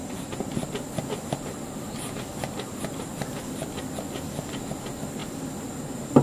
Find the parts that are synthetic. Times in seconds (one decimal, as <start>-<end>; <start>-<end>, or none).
0.0-3.5; 5.2-6.2